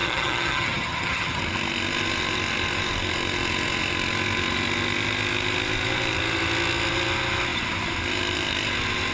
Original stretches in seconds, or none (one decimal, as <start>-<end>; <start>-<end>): 1.4-9.1